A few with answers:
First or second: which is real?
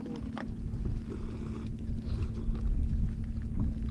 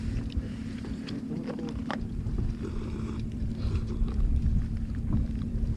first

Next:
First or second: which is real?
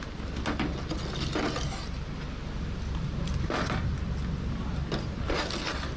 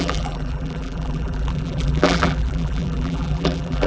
first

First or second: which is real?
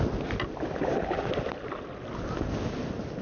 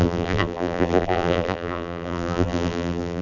first